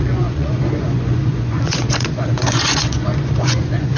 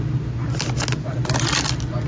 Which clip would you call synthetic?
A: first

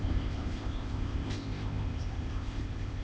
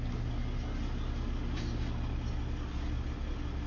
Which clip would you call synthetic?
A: first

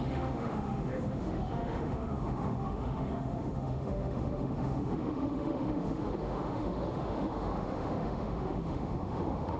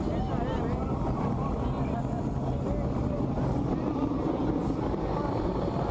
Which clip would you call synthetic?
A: first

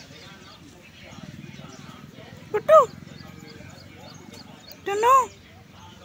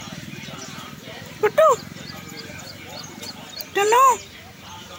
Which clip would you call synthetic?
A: second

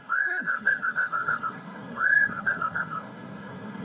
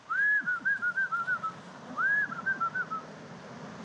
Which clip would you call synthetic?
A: first